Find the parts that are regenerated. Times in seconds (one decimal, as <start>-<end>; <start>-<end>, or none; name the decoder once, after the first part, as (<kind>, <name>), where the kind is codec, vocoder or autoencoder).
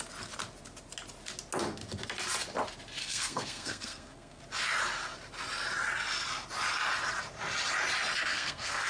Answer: 3.0-4.4 (codec, SNAC); 8.3-8.9